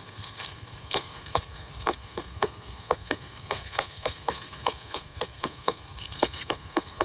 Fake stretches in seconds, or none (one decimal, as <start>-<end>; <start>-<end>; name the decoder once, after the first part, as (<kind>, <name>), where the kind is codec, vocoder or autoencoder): 0.0-7.0 (codec, SNAC)